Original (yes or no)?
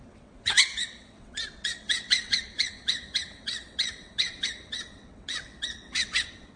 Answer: no